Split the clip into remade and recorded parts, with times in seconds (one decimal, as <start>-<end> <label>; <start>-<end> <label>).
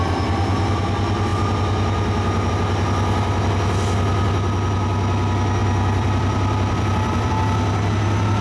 0.0-5.6 recorded; 5.6-7.3 remade; 7.3-8.4 recorded